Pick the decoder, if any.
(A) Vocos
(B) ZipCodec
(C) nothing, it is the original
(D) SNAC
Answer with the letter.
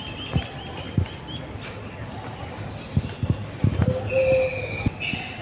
C